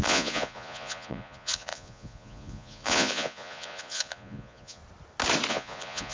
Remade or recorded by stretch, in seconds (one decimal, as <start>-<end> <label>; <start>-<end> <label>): 0.0-4.8 remade; 4.8-5.5 recorded; 5.5-6.1 remade